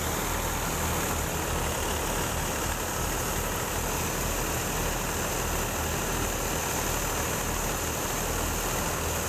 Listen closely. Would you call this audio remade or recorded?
recorded